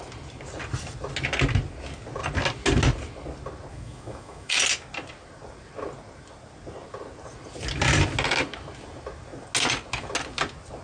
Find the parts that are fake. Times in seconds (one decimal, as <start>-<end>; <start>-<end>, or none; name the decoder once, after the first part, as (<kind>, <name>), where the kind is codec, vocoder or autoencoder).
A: 3.7-4.6 (autoencoder, DAC-VAE)

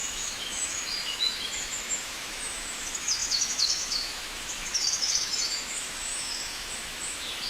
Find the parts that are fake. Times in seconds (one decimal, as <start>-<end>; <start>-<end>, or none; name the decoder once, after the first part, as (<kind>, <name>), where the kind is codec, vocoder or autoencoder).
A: 0.0-7.5 (autoencoder, DAC-VAE)

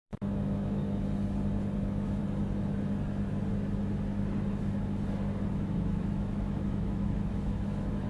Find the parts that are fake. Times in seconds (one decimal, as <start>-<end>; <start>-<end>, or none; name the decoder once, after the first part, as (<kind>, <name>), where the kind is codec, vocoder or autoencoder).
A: 0.0-0.8 (autoencoder, DAC-VAE); 1.8-2.2; 5.5-8.1

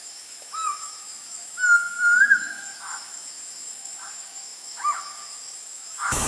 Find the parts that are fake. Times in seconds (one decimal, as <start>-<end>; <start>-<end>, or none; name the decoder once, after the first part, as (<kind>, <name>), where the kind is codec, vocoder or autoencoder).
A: 0.0-6.3 (autoencoder, DAC-VAE)